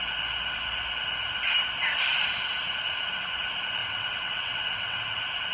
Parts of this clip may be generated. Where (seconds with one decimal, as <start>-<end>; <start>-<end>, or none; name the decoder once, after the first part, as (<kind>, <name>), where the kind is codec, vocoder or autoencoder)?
3.8-5.0 (vocoder, WaveNeXt)